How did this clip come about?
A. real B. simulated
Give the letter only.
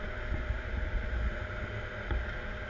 A